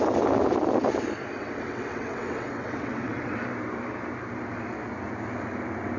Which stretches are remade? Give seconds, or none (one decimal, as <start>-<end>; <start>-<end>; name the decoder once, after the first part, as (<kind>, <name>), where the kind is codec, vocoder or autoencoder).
1.4-3.4 (vocoder, WaveNeXt)